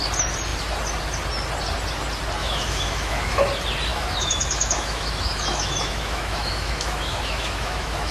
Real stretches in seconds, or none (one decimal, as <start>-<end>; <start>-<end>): 0.0-2.4; 3.4-3.9